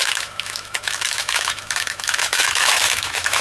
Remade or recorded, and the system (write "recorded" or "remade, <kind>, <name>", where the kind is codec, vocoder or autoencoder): remade, autoencoder, DAC-VAE